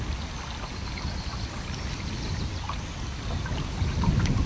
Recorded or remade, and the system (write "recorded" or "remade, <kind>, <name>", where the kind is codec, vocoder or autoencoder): recorded